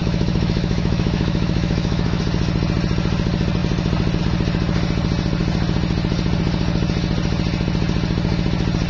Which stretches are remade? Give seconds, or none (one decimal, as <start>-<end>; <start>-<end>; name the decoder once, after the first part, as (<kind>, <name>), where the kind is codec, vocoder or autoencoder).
0.0-2.2 (autoencoder, DAC-VAE)

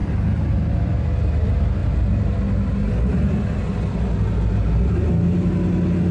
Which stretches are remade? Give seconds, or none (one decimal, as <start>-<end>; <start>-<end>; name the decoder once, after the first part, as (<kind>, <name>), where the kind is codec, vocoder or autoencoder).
none